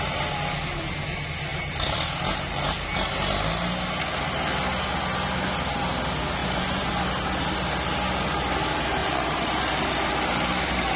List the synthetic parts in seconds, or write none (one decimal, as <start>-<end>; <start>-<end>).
6.4-7.0; 9.0-9.6